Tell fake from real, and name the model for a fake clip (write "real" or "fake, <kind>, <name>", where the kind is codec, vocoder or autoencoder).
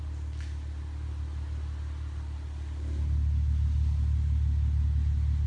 real